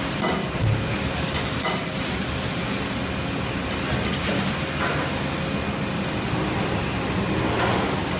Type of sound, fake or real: real